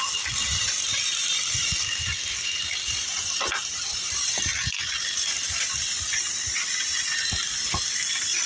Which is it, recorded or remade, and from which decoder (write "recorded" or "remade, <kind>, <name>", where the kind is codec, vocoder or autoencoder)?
recorded